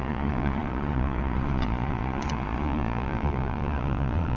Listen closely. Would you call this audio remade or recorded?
remade